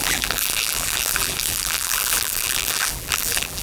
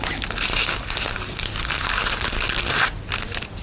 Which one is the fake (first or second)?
first